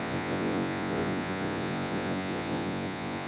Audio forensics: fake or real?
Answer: fake